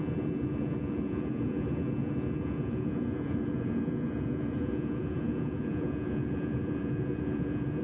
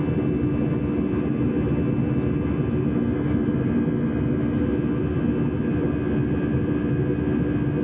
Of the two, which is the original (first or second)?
second